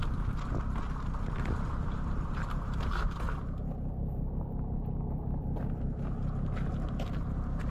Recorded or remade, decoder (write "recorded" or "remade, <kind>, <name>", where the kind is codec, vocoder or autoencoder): recorded